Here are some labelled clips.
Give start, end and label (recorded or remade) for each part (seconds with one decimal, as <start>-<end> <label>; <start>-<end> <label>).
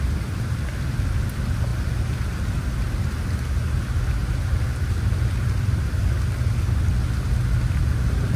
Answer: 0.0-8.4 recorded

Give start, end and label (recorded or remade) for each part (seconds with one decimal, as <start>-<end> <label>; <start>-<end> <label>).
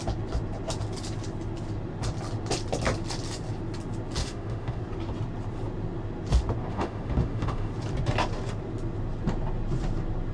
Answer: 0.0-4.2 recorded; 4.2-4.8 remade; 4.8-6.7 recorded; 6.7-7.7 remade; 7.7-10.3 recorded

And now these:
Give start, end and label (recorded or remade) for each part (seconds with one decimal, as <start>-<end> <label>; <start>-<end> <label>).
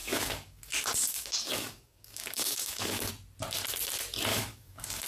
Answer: 0.0-3.1 remade; 3.1-4.3 recorded; 4.3-5.1 remade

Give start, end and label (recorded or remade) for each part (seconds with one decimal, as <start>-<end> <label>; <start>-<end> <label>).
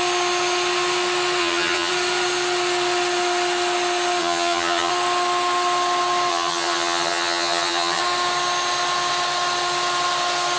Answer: 0.0-1.4 recorded; 1.4-1.9 remade; 1.9-4.2 recorded; 4.2-4.9 remade; 4.9-6.3 recorded; 6.3-8.0 remade; 8.0-10.6 recorded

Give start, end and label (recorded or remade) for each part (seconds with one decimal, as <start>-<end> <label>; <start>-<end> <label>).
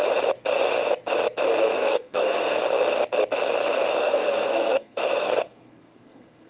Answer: 0.0-1.7 recorded; 1.7-2.6 remade; 2.6-4.0 recorded; 4.0-6.5 remade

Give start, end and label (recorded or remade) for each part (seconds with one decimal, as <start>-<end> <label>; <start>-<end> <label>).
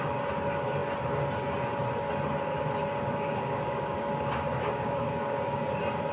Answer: 0.0-2.8 recorded; 2.8-5.6 remade; 5.6-6.1 recorded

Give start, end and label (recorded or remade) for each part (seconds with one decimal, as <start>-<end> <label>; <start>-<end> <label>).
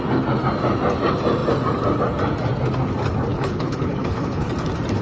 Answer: 0.0-3.3 recorded; 3.3-4.5 remade; 4.5-5.0 recorded